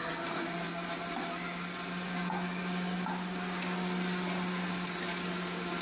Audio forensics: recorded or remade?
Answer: recorded